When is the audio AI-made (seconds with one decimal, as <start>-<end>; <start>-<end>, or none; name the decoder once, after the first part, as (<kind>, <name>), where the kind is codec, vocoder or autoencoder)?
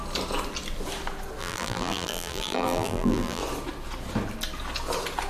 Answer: 1.4-3.4 (vocoder, BigVGAN v2)